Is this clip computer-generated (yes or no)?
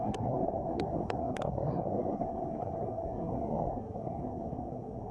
yes